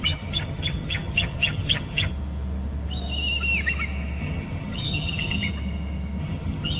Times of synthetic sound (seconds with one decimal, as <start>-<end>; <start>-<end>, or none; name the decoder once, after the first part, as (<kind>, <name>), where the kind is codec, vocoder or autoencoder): 0.0-2.1 (vocoder, HiFi-GAN); 4.2-5.5; 6.2-6.8